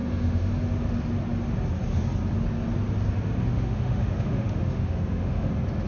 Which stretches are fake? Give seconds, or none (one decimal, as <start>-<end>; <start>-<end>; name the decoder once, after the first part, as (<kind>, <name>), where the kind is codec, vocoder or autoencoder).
0.0-0.5 (autoencoder, DAC-VAE); 3.5-5.5